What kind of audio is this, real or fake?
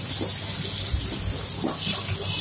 real